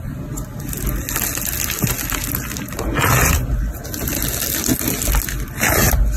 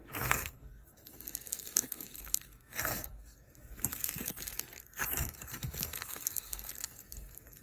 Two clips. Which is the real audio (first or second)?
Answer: first